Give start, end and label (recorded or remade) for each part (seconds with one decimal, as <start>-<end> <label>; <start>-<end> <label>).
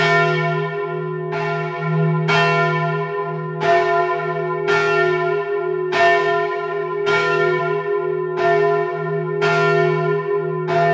0.0-3.2 recorded; 3.2-4.0 remade; 4.0-6.2 recorded; 6.2-7.6 remade; 7.6-10.9 recorded